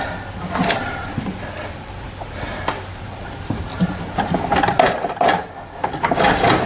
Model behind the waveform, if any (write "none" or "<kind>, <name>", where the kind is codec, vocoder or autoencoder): none